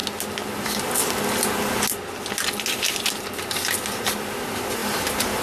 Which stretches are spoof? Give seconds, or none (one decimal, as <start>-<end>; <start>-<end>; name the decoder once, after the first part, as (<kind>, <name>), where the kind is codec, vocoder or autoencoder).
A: none